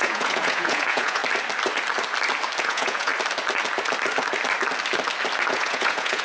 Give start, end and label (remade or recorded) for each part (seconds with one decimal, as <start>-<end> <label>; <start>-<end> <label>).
0.0-1.2 remade; 1.2-2.6 recorded; 2.6-3.1 remade; 3.1-5.5 recorded; 5.5-6.2 remade